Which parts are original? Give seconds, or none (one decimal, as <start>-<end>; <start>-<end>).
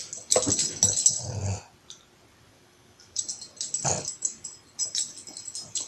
0.0-2.5; 3.2-5.9